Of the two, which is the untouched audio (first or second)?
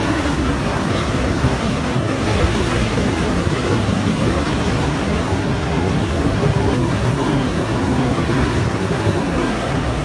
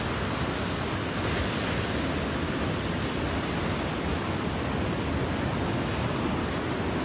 second